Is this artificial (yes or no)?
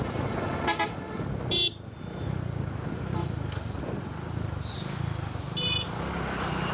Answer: no